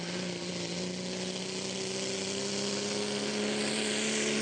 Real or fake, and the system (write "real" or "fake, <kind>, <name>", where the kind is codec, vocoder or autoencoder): real